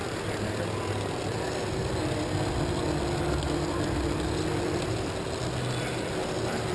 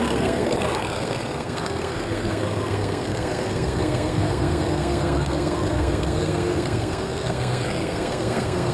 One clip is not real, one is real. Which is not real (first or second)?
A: second